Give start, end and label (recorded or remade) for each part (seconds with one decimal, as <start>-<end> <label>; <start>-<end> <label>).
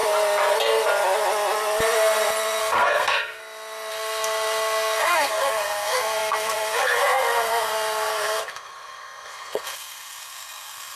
0.0-2.6 recorded; 2.6-3.4 remade; 3.4-3.9 recorded; 3.9-11.0 remade